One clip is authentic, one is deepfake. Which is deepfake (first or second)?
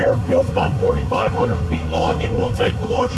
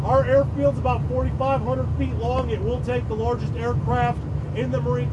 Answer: first